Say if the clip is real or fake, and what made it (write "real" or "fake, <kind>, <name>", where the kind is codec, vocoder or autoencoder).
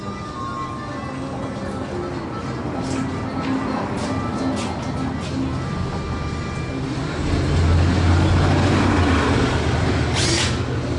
real